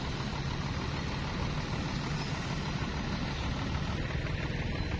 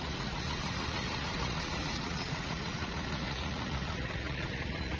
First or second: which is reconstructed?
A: second